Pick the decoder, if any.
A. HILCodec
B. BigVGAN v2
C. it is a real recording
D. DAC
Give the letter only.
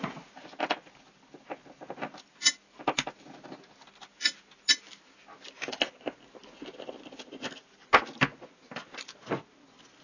C